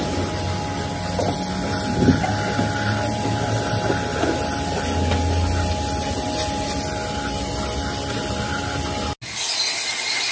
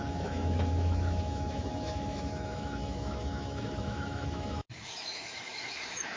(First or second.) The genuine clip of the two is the first